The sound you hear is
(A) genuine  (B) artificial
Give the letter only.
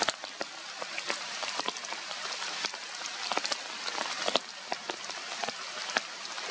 A